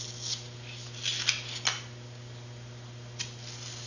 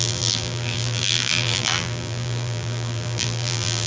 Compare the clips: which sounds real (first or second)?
first